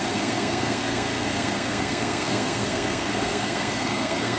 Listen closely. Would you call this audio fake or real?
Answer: fake